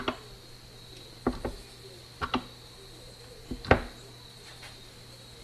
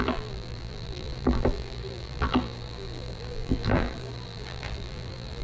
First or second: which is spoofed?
second